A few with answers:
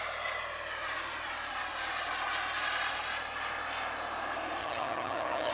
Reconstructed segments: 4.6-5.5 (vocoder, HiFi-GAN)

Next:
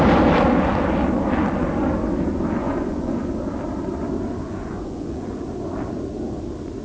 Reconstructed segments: 2.6-3.3 (vocoder, Vocos); 4.4-5.4

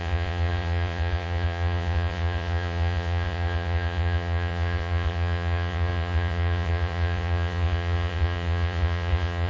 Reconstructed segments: 0.0-9.5 (vocoder, Vocos)

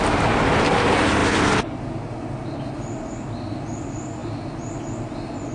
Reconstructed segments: 1.2-1.8 (vocoder, BigVGAN v2)

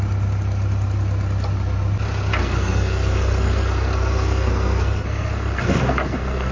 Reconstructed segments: 2.4-6.5 (codec, SNAC)

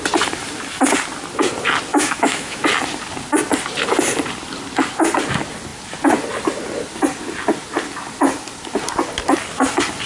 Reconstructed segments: 1.9-2.6 (autoencoder, DAC-VAE)

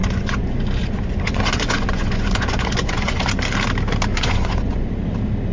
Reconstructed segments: 0.0-3.3 (vocoder, Vocos); 4.1-4.9